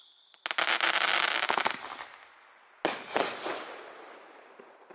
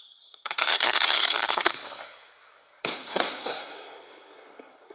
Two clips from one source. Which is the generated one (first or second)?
second